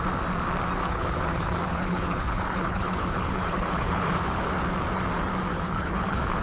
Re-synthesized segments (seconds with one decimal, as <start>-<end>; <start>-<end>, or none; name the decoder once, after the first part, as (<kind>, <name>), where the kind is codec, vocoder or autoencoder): 0.8-4.4 (codec, HILCodec); 5.5-6.4